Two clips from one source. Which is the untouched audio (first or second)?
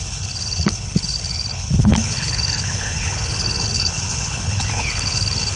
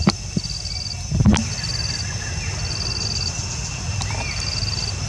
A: second